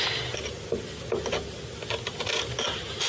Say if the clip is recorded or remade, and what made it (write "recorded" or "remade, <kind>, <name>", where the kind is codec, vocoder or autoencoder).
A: recorded